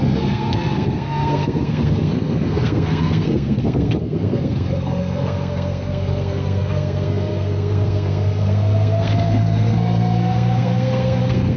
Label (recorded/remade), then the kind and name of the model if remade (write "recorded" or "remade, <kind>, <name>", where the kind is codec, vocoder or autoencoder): remade, codec, SNAC